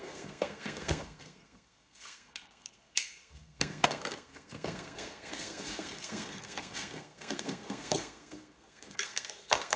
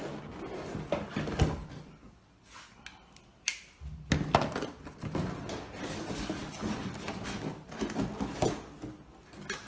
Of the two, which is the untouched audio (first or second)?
second